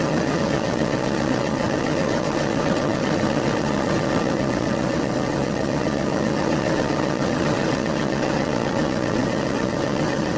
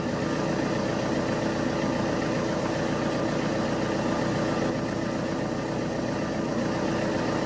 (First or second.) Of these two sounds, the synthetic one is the first